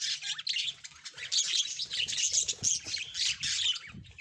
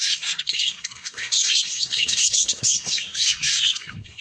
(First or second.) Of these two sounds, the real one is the first